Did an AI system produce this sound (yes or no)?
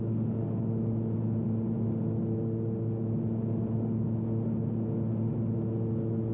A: no